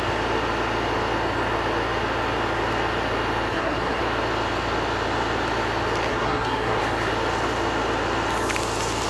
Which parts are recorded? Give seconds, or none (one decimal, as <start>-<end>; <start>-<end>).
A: 0.0-3.5; 4.0-6.1; 6.8-9.1